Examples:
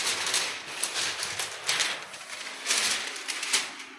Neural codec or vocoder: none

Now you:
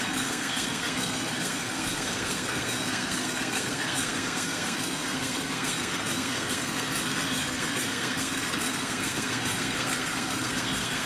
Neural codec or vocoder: codec, SNAC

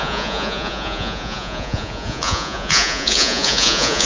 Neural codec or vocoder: vocoder, Vocos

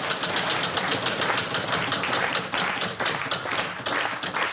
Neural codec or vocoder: none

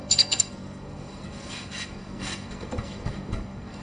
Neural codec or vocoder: codec, SNAC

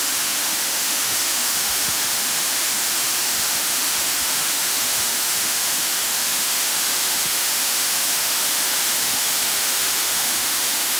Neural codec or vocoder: autoencoder, DAC-VAE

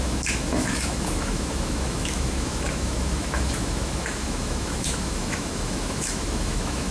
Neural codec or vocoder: autoencoder, DAC-VAE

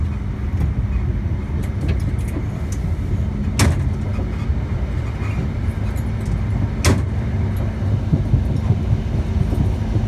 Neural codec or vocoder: none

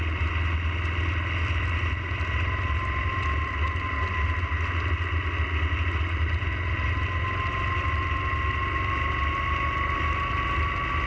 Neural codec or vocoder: none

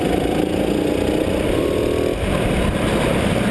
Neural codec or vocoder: none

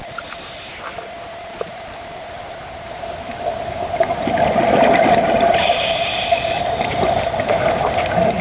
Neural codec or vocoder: none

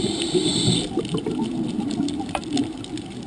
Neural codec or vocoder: vocoder, BigVGAN v2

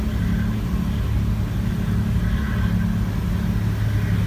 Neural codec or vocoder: none